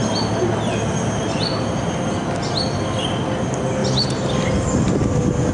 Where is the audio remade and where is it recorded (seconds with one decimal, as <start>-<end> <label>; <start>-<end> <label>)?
0.0-5.5 recorded